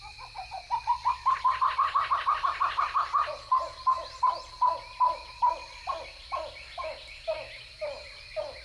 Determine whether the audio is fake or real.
real